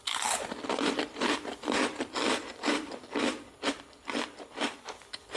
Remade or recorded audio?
remade